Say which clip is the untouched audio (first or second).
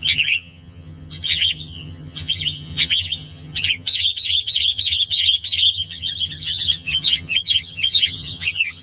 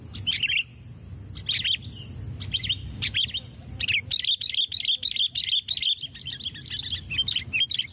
second